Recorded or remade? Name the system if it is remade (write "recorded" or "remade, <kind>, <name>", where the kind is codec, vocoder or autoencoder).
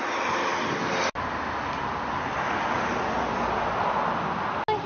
recorded